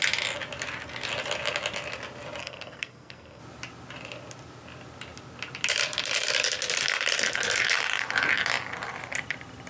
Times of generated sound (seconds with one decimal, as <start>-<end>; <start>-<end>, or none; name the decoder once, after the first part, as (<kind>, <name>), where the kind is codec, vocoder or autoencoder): 2.4-3.4 (codec, SNAC)